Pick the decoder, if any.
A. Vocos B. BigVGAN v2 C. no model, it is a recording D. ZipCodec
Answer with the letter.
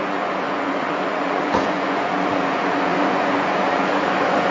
A